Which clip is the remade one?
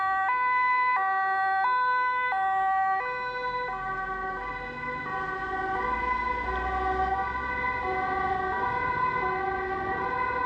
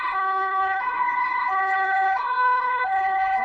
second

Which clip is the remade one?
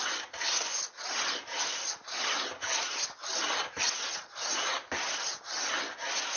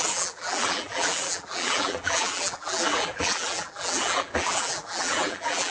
second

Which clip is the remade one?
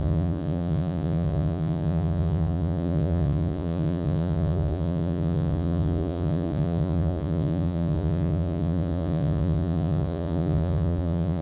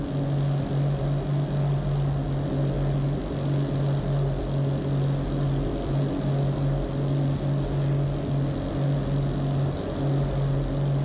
first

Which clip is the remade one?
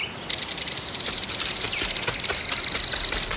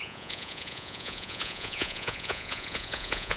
second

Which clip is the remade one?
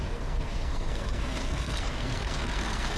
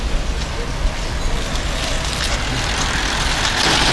first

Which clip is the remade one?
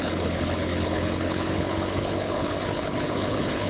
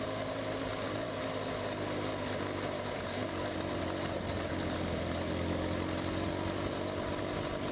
first